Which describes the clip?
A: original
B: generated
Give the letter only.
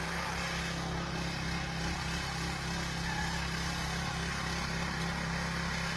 A